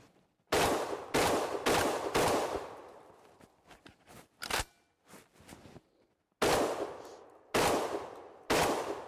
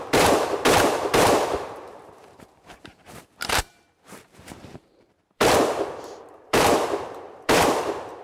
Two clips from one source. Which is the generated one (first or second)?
second